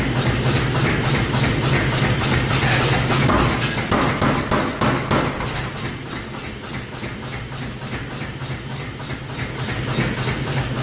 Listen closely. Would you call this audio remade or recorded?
recorded